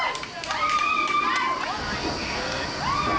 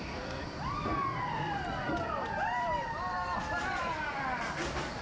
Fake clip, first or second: second